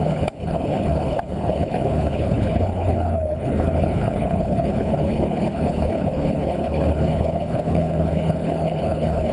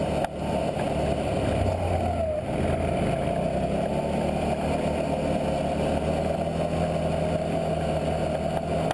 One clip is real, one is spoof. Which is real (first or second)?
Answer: second